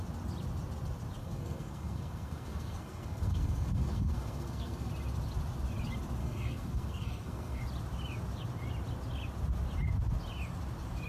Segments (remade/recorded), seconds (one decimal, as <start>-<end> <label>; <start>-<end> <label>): 0.0-1.2 recorded; 1.2-4.9 remade; 4.9-6.2 recorded; 6.2-7.6 remade; 7.6-11.1 recorded